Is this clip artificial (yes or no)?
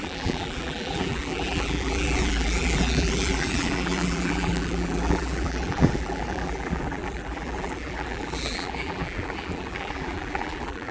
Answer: yes